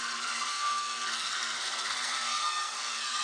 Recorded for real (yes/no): no